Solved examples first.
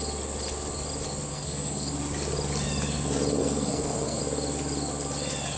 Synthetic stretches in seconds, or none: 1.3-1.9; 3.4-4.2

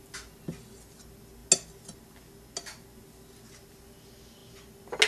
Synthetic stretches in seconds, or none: none